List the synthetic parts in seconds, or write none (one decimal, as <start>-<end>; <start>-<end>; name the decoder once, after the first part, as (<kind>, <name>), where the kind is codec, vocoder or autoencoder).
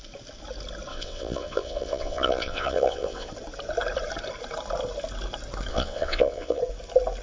0.9-3.3 (vocoder, WaveNeXt); 5.7-6.6